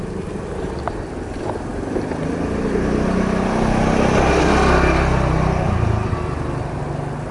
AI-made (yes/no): no